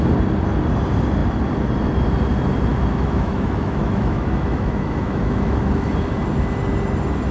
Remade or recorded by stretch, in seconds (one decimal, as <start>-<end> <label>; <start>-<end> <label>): 0.0-2.7 recorded; 2.7-5.9 remade; 5.9-7.3 recorded